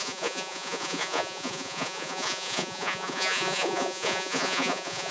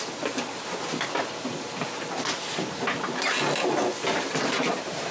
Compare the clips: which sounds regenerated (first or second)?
first